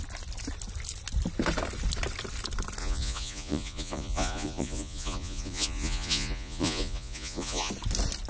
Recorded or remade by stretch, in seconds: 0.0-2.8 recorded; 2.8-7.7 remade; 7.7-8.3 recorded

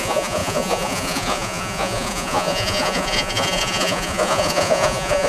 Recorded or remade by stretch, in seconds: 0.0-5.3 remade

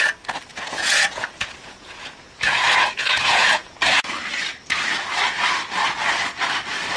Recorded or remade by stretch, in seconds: 0.0-0.5 recorded; 0.5-4.1 remade; 4.1-7.0 recorded

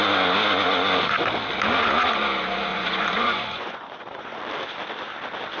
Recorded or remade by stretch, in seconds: 0.0-2.7 recorded; 2.7-4.4 remade; 4.4-5.6 recorded